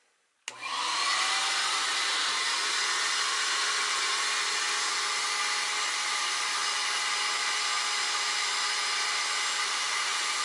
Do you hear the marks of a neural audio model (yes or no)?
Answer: no